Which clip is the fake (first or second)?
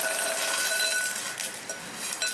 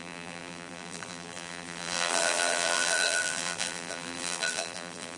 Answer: second